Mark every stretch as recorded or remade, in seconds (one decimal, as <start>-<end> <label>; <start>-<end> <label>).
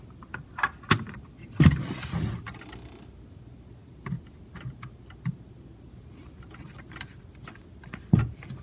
0.0-8.6 recorded